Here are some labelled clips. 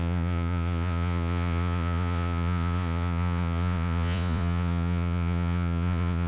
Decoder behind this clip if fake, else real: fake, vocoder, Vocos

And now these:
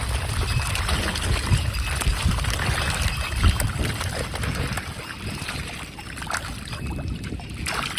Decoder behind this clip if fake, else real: real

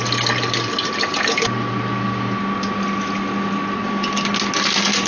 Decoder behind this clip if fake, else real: real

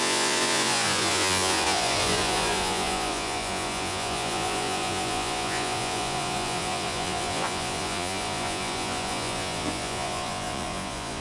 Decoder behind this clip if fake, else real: fake, vocoder, Vocos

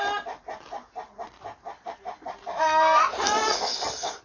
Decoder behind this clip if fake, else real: real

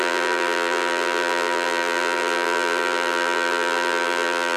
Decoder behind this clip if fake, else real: fake, vocoder, BigVGAN v2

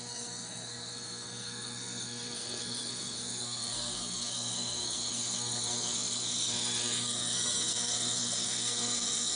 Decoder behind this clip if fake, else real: fake, codec, SNAC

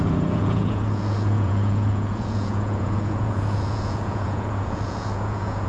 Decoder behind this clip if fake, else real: fake, vocoder, Vocos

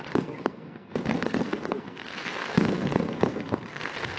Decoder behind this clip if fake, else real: fake, codec, SNAC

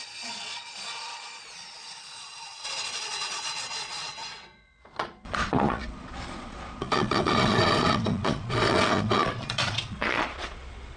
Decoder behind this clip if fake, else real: fake, vocoder, Vocos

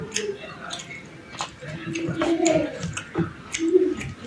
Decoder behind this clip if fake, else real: real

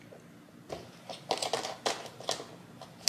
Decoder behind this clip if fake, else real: real